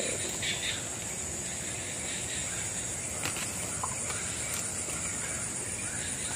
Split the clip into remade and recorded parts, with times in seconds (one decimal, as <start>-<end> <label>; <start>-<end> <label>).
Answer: 0.0-6.4 recorded